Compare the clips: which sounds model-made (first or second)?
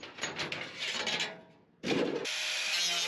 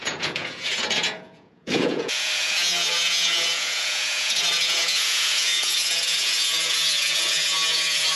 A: second